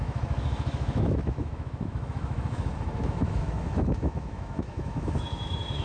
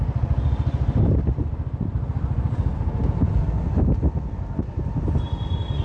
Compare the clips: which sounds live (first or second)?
second